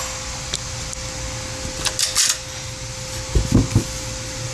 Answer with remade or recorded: recorded